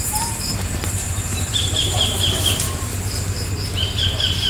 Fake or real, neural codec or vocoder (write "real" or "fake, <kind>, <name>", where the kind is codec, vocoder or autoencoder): fake, vocoder, BigVGAN v2